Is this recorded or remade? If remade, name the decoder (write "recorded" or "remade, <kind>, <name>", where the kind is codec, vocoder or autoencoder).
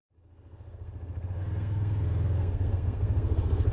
remade, codec, SNAC